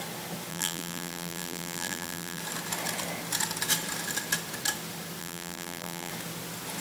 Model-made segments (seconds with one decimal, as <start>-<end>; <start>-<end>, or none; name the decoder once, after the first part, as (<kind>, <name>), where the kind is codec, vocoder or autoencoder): 0.5-2.4 (vocoder, BigVGAN v2); 5.2-6.1